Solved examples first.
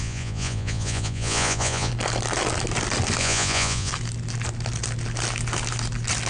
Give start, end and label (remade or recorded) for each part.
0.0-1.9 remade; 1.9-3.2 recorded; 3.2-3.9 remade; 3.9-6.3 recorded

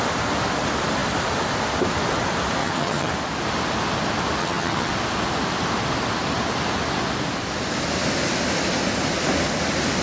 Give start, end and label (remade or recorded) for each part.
0.0-2.6 recorded; 2.6-3.1 remade; 3.1-4.4 recorded; 4.4-4.9 remade; 4.9-10.0 recorded

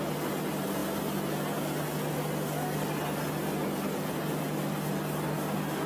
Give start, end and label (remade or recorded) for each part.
0.0-5.9 recorded

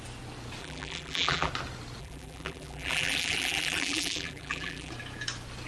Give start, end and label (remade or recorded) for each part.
0.0-0.6 recorded; 0.6-1.5 remade; 1.5-2.0 recorded; 2.0-4.9 remade; 4.9-5.7 recorded